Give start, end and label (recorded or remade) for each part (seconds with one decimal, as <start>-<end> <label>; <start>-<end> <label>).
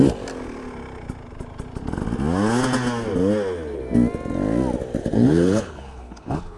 0.0-5.0 recorded; 5.0-6.6 remade